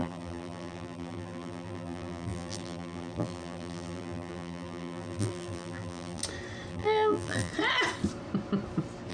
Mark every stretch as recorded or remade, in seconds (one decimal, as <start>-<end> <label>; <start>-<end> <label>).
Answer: 0.0-6.2 remade; 6.2-6.7 recorded; 6.7-7.5 remade; 7.5-9.1 recorded